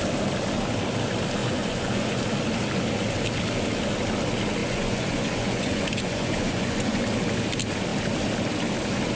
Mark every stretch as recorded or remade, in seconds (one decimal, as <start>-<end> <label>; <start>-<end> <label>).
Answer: 0.0-1.4 recorded; 1.4-2.2 remade; 2.2-4.6 recorded; 4.6-7.0 remade; 7.0-9.2 recorded